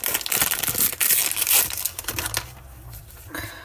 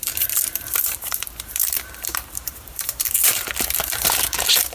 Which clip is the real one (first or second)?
first